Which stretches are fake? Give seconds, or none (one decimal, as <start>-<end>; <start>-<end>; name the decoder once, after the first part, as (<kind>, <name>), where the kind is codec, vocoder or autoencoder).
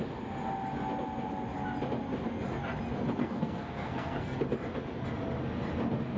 3.2-4.4 (codec, SNAC)